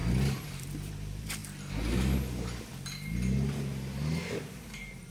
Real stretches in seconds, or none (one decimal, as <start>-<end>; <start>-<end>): 0.0-0.5; 1.4-4.5